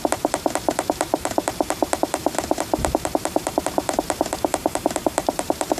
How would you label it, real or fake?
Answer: fake